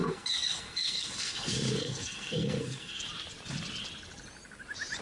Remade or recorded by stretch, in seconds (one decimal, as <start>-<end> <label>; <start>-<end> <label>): 0.0-3.0 remade; 3.0-5.0 recorded